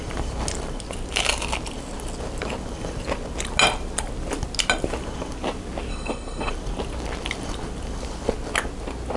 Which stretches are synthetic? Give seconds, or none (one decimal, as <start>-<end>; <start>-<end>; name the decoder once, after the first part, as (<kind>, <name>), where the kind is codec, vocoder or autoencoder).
5.9-6.5 (codec, HILCodec)